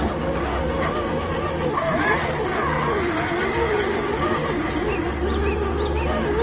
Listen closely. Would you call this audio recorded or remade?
recorded